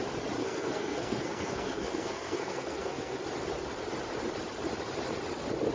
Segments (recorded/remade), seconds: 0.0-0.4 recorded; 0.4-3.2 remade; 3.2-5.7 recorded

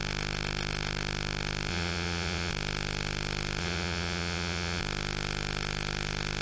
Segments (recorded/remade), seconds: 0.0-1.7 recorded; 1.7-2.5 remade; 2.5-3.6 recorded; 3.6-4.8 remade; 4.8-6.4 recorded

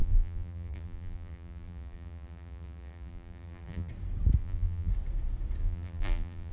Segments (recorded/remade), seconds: 0.0-3.9 remade; 3.9-4.4 recorded; 4.4-4.9 remade; 4.9-5.6 recorded; 5.6-6.5 remade

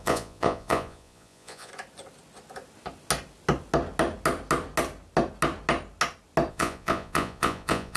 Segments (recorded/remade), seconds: 0.0-1.7 remade; 1.7-6.5 recorded; 6.5-8.0 remade

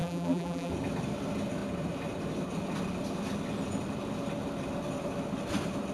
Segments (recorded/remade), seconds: 0.0-0.7 remade; 0.7-5.9 recorded

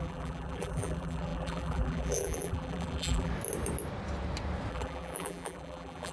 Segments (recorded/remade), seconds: 0.0-3.3 remade; 3.3-4.7 recorded; 4.7-6.1 remade

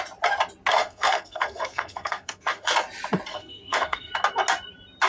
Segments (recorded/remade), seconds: 0.0-0.7 recorded; 0.7-2.7 remade; 2.7-3.3 recorded; 3.3-4.1 remade; 4.1-5.1 recorded

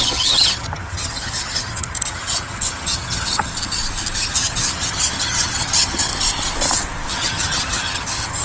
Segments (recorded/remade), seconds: 0.0-3.5 remade; 3.5-4.3 recorded; 4.3-6.1 remade; 6.1-7.1 recorded; 7.1-8.4 remade